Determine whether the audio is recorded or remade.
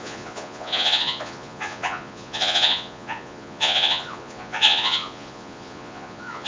remade